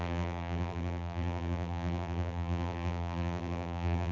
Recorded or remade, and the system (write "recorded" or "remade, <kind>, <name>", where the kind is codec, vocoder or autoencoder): remade, vocoder, BigVGAN v2